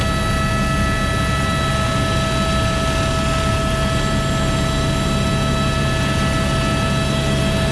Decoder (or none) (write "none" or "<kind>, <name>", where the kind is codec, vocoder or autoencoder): none